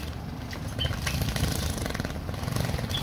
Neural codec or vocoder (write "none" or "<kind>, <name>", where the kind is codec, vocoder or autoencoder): none